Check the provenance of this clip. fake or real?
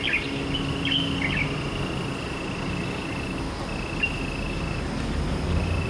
real